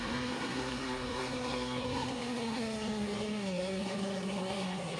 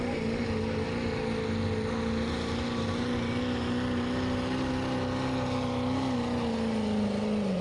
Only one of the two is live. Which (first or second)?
second